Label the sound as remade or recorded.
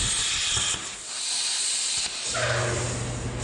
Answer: recorded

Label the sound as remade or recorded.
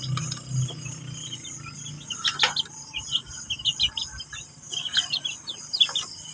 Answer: recorded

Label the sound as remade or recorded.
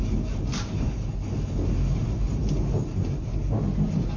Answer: recorded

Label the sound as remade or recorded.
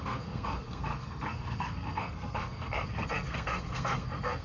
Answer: remade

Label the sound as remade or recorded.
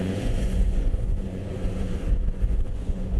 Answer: remade